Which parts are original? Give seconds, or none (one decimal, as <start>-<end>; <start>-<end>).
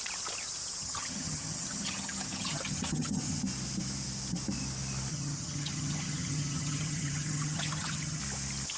0.0-0.8; 3.4-5.1; 8.2-8.8